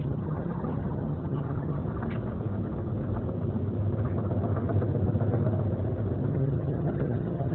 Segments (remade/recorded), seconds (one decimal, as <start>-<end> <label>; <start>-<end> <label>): 0.0-1.8 remade; 1.8-6.3 recorded; 6.3-7.5 remade